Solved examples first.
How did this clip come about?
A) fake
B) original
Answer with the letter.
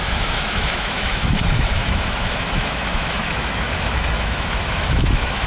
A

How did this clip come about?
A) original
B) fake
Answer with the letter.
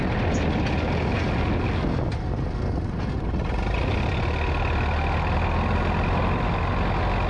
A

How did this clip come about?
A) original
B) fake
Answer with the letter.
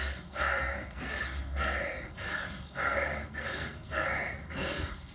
B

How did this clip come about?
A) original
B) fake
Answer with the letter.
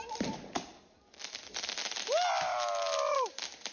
A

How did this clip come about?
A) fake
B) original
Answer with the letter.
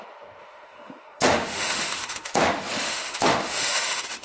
A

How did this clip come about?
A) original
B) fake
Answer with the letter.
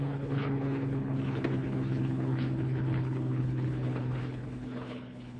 B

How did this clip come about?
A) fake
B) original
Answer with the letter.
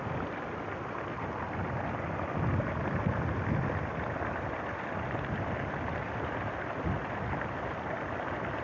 B